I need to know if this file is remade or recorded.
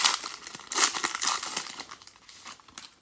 recorded